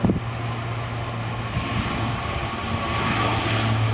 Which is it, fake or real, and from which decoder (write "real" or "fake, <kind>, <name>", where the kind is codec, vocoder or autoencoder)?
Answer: real